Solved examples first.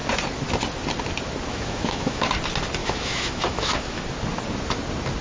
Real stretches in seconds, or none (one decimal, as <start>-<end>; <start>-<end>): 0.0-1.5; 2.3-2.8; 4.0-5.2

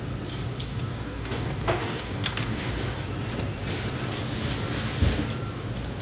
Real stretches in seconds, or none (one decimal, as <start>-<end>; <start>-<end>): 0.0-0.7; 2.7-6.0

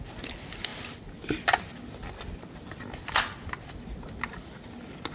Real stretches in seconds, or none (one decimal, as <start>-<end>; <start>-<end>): 0.0-5.1

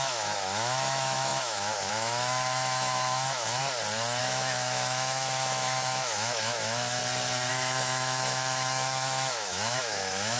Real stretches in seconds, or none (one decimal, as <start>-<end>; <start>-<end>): 3.6-4.2; 7.0-7.5